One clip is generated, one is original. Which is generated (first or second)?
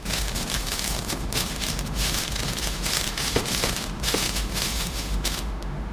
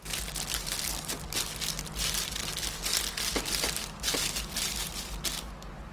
first